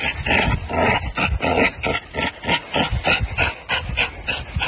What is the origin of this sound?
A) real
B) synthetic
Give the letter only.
A